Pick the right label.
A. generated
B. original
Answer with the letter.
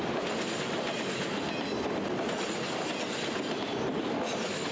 B